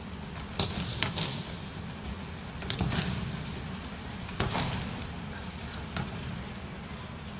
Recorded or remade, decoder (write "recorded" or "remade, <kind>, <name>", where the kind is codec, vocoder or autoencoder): recorded